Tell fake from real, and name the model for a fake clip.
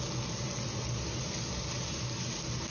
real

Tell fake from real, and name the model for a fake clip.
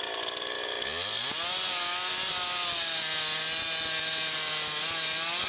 real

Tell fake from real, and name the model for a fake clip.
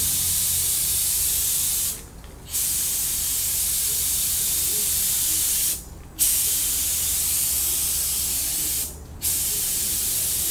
real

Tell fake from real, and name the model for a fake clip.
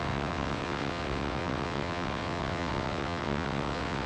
fake, vocoder, WaveNeXt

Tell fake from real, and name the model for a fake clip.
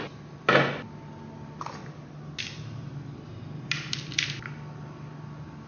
real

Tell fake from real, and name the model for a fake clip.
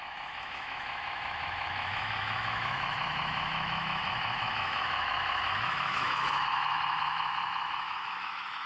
fake, autoencoder, DAC-VAE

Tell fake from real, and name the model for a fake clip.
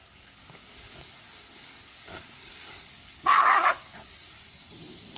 fake, codec, DAC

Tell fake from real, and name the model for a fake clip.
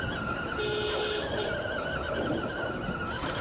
real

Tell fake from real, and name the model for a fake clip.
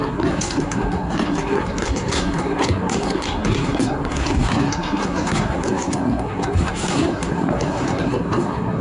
fake, codec, SNAC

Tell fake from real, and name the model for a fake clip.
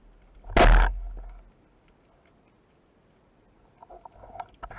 real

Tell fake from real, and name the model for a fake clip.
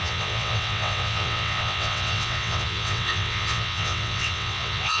fake, vocoder, WaveNeXt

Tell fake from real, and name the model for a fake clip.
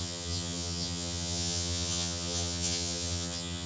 fake, vocoder, HiFi-GAN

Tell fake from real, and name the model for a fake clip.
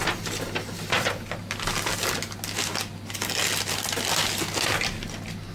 real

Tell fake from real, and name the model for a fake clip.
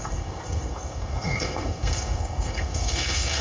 fake, codec, SNAC